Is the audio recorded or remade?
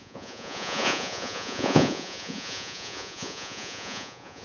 remade